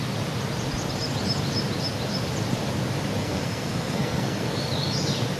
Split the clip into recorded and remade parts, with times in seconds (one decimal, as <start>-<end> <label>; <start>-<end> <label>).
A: 0.0-3.2 recorded; 3.2-4.6 remade; 4.6-5.4 recorded